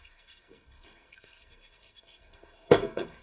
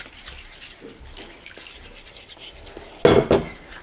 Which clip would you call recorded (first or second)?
second